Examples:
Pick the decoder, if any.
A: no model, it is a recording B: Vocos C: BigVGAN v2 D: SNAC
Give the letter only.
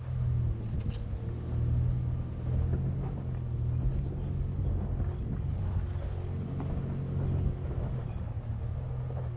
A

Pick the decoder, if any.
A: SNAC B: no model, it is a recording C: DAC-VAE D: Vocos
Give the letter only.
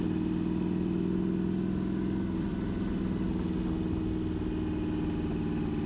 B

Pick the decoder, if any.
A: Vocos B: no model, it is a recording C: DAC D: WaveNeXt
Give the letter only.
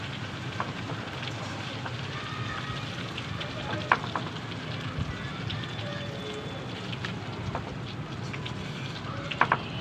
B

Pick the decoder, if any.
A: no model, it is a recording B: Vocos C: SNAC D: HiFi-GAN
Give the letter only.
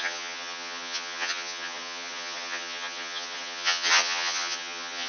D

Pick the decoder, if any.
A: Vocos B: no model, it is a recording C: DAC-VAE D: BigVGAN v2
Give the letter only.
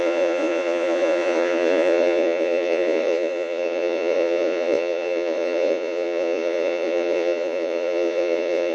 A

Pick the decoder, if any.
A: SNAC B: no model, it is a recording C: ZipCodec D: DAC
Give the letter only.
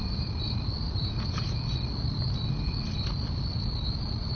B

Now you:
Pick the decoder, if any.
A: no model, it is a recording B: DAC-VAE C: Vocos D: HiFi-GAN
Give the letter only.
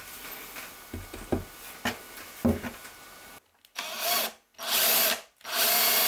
A